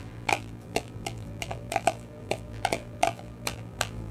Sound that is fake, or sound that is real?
fake